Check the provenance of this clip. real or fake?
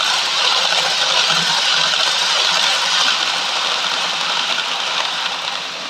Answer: fake